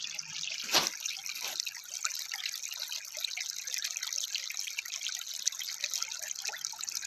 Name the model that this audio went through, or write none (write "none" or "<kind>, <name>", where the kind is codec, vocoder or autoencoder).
none